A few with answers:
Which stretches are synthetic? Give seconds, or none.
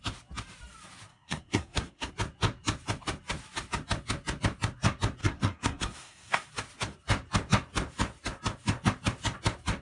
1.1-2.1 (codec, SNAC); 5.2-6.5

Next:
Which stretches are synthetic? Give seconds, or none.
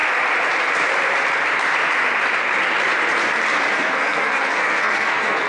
3.7-5.5 (codec, SNAC)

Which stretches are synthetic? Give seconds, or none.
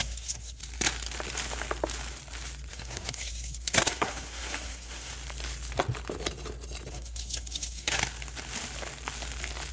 0.0-0.6 (codec, SNAC); 2.7-5.1; 6.9-8.0